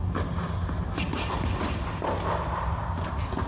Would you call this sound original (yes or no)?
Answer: yes